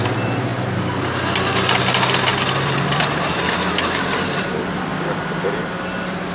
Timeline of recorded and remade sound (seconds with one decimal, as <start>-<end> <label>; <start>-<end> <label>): 0.0-2.3 recorded; 2.3-3.0 remade; 3.0-4.9 recorded; 4.9-5.5 remade; 5.5-6.3 recorded